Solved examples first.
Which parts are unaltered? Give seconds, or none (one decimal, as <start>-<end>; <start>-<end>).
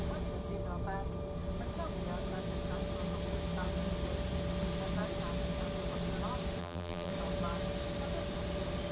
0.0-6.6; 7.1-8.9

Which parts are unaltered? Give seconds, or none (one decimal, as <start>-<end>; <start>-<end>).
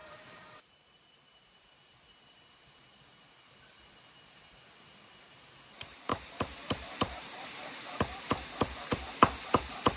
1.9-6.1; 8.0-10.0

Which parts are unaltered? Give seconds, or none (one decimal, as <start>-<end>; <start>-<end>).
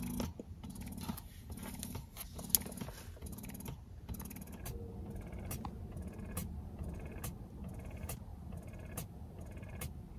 0.0-3.3; 4.9-6.4; 7.5-8.3; 9.4-10.2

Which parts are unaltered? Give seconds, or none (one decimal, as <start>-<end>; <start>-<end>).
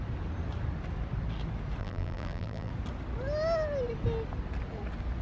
0.0-1.8; 2.7-5.2